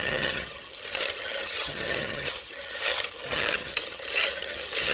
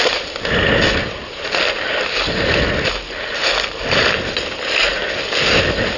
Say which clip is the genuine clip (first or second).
second